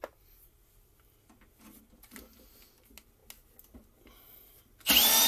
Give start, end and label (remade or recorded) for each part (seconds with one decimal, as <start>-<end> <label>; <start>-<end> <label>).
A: 0.0-5.3 recorded